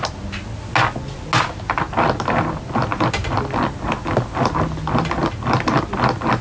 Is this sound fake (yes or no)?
no